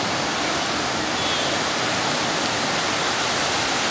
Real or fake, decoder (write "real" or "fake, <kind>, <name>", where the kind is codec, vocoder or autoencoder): real